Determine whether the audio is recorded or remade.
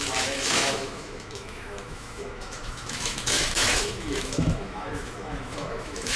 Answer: remade